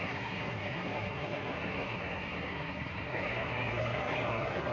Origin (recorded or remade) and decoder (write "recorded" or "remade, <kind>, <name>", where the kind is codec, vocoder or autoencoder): remade, codec, SNAC